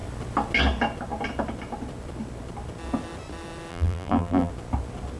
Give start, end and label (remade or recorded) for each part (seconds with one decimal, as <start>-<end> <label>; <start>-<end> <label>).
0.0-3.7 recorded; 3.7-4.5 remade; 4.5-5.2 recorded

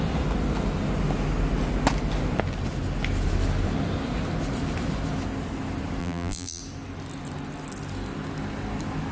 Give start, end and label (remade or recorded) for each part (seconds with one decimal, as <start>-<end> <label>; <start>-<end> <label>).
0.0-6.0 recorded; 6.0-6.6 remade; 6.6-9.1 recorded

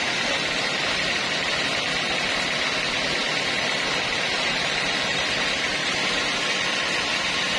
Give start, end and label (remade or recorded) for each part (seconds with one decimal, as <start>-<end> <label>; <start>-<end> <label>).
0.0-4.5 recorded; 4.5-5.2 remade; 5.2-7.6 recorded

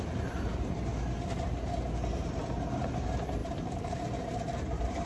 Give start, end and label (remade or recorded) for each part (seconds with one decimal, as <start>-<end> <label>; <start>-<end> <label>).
0.0-0.9 remade; 0.9-2.8 recorded; 2.8-5.1 remade

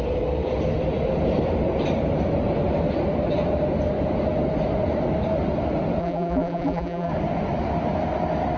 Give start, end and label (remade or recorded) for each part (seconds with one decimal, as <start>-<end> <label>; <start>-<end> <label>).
0.0-6.0 recorded; 6.0-7.1 remade; 7.1-8.6 recorded